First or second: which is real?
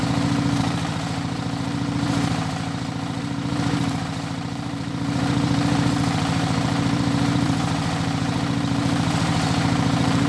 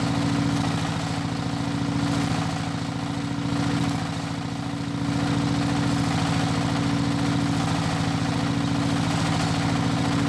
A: second